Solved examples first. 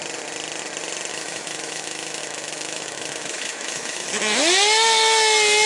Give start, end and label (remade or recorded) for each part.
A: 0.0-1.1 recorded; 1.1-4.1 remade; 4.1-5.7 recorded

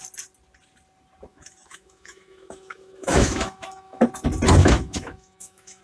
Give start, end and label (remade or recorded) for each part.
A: 0.0-1.3 recorded; 1.3-4.0 remade; 4.0-4.6 recorded; 4.6-5.8 remade